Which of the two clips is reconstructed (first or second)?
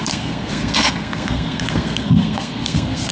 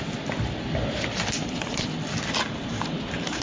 first